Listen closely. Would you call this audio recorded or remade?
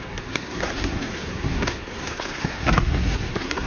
remade